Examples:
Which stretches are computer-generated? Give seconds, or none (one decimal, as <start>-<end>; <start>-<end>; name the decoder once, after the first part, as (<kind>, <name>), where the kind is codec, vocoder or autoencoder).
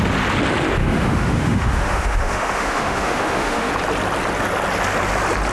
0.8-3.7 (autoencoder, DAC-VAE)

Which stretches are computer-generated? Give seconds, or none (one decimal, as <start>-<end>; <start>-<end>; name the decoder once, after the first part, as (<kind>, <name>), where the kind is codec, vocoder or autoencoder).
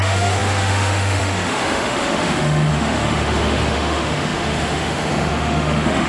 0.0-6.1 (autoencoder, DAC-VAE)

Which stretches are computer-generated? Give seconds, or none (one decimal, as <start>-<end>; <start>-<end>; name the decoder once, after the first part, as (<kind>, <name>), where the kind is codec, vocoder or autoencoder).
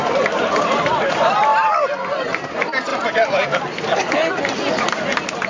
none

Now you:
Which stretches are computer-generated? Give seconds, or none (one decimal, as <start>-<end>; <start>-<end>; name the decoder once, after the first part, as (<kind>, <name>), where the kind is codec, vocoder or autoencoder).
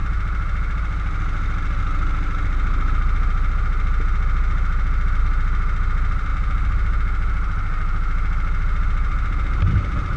none